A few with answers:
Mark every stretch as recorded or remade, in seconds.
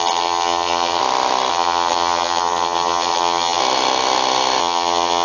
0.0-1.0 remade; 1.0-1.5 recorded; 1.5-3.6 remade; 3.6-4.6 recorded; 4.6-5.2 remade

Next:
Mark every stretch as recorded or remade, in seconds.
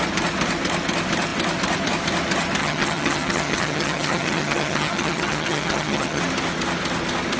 0.0-2.6 recorded; 2.6-6.2 remade; 6.2-7.4 recorded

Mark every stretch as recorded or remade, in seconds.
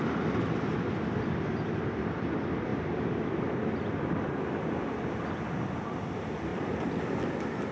0.0-2.7 recorded; 2.7-3.3 remade; 3.3-6.5 recorded; 6.5-7.0 remade; 7.0-7.7 recorded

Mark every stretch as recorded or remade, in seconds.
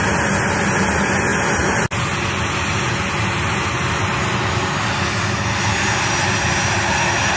0.0-7.4 recorded